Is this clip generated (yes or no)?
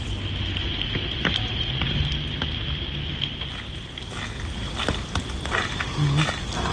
no